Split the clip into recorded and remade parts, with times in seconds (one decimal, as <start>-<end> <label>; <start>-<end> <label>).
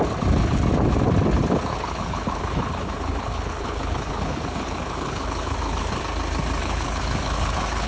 0.0-1.7 recorded; 1.7-6.0 remade; 6.0-6.6 recorded; 6.6-7.9 remade